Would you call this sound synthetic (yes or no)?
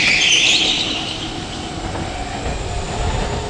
no